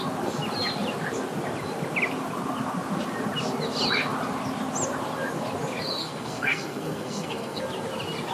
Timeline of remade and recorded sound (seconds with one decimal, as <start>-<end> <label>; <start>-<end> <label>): 0.0-6.0 recorded; 6.0-7.6 remade; 7.6-8.3 recorded